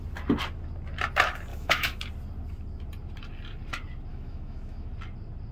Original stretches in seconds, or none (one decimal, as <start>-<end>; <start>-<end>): 0.0-1.5; 2.0-4.1; 4.9-5.5